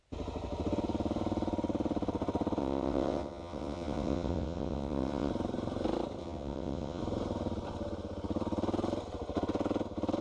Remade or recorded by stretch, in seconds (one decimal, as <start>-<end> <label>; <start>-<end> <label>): 0.0-2.6 recorded; 2.6-5.3 remade; 5.3-6.2 recorded; 6.2-7.0 remade; 7.0-10.2 recorded